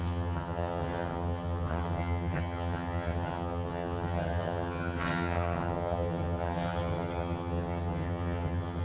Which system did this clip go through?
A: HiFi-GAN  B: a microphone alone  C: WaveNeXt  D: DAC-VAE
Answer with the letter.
A